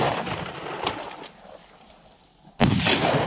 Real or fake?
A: fake